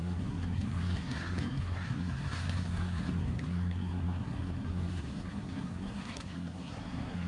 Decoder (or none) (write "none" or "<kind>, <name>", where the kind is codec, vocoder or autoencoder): codec, SNAC